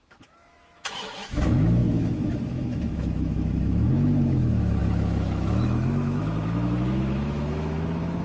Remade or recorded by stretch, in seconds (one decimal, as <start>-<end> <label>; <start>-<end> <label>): 0.0-8.2 remade